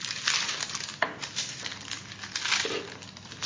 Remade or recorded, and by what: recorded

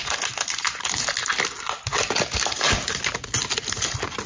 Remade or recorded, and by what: recorded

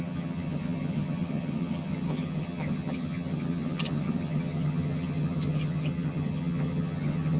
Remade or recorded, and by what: remade, vocoder, HiFi-GAN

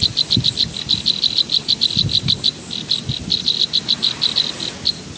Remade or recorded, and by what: recorded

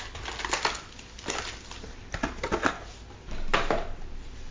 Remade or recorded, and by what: recorded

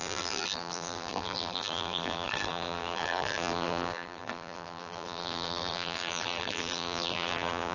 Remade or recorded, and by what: remade, vocoder, BigVGAN v2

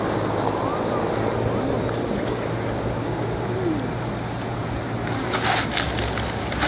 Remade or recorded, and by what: recorded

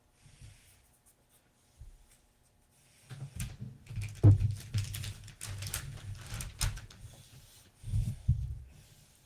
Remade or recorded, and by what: recorded